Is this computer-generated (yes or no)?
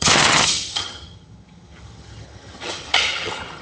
yes